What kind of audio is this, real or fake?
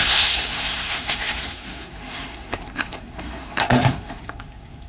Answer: fake